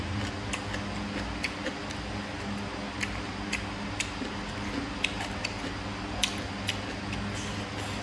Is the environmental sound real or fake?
real